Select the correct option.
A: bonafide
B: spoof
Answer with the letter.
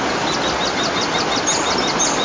A